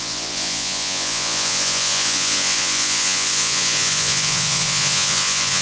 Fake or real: fake